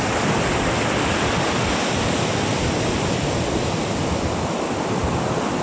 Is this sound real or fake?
real